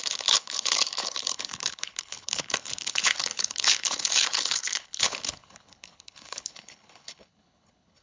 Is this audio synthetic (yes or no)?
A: yes